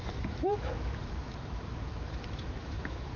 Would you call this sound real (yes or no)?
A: no